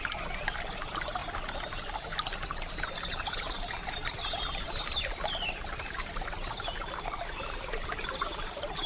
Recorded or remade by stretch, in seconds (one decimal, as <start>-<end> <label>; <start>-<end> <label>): 0.0-8.9 recorded